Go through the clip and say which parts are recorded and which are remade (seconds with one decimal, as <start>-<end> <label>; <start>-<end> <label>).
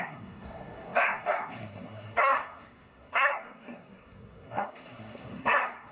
0.0-5.9 remade